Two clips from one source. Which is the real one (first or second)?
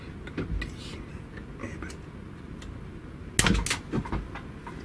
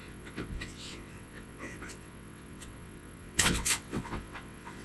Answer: first